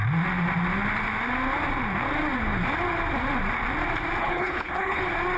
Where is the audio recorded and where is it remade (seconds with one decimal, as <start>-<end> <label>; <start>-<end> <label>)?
0.0-4.2 recorded; 4.2-5.0 remade; 5.0-5.4 recorded